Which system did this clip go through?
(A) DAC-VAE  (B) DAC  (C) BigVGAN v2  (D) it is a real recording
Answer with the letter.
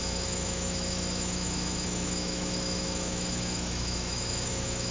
A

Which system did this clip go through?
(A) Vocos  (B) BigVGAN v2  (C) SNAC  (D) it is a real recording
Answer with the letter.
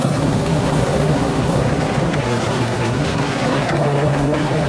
C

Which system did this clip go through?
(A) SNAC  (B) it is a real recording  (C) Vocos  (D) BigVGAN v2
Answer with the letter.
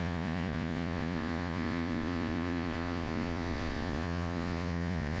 C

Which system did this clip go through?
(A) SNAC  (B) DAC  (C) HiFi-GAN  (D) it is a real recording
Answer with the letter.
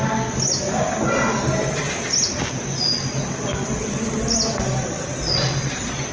D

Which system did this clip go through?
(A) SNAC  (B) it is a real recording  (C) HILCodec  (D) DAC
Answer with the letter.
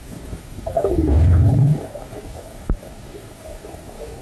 D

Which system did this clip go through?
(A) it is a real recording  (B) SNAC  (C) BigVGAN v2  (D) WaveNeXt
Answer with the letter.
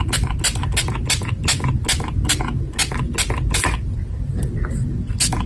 A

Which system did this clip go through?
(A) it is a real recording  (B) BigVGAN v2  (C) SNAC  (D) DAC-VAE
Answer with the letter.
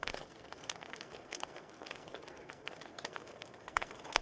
C